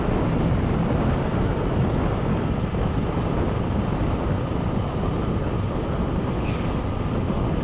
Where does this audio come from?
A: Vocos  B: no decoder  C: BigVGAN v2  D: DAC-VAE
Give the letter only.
B